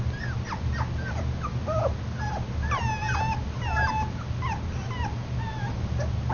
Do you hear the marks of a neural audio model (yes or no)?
no